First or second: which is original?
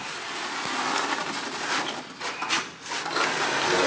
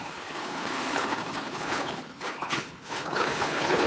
first